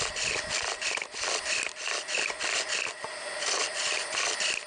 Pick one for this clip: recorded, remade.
recorded